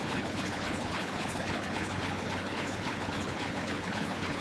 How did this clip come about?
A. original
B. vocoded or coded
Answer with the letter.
B